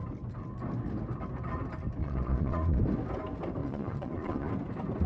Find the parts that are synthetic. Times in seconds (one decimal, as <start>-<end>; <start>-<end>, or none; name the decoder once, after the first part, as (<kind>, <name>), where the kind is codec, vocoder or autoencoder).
2.0-2.8 (vocoder, Vocos); 3.6-4.5